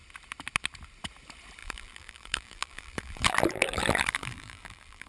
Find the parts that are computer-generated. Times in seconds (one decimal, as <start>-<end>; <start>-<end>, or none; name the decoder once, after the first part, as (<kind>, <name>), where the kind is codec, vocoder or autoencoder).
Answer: 1.6-5.1 (vocoder, BigVGAN v2)